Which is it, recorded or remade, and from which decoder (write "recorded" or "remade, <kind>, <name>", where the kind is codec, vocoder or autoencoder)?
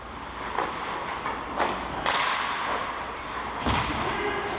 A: recorded